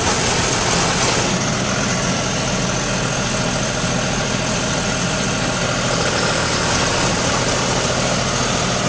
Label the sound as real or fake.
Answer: real